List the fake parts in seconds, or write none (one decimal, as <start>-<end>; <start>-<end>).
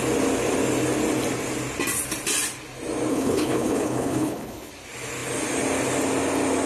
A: 3.1-4.7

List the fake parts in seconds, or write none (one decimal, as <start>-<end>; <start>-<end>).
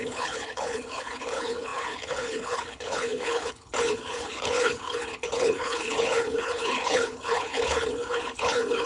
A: 0.0-8.9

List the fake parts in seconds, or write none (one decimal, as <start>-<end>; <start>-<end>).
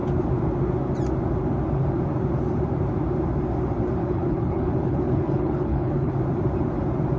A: 4.0-6.1